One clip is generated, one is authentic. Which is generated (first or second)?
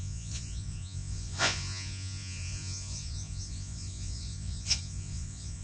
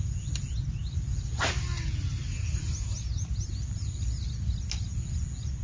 first